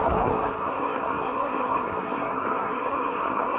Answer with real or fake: fake